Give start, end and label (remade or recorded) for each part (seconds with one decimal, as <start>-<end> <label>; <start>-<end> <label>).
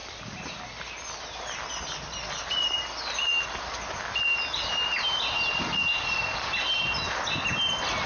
0.0-8.1 recorded